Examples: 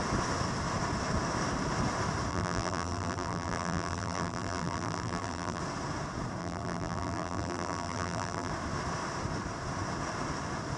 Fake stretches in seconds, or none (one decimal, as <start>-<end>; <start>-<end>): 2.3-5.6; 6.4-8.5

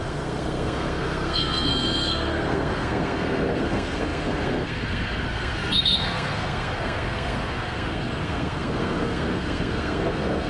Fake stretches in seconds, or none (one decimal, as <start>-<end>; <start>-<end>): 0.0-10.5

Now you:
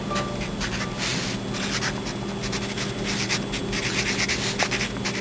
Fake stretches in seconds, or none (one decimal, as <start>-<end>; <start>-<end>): none

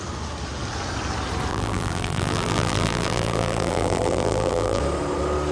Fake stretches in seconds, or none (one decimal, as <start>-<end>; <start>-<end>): 1.5-4.8

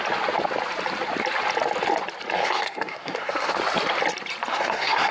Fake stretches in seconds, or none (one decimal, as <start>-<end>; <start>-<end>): 2.4-3.5; 4.5-5.1

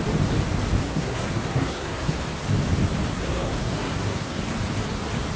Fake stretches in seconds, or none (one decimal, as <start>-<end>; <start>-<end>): 0.8-2.2; 3.1-4.4

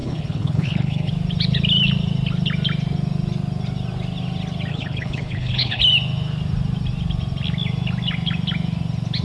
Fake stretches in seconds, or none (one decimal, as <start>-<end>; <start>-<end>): 0.0-1.1; 4.7-5.8

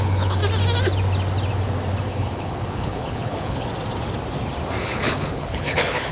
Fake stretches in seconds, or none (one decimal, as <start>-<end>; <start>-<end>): 0.0-0.4; 2.0-3.7; 4.8-6.1